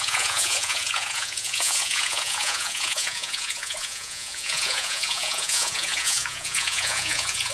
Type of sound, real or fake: fake